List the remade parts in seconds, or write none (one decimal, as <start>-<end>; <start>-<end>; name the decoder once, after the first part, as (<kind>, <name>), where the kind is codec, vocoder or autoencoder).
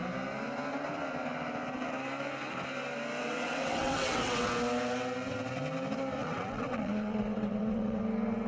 3.2-4.5 (vocoder, WaveNeXt); 6.2-8.0